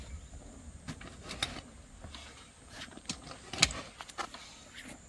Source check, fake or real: real